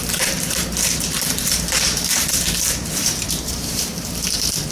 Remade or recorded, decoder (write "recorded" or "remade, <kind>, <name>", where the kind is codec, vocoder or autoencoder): remade, vocoder, BigVGAN v2